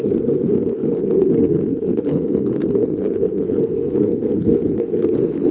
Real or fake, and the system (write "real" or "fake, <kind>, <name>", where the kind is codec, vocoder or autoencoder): fake, codec, SNAC